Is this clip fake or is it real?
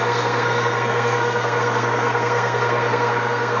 fake